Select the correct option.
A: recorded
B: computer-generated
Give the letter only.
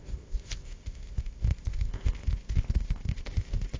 B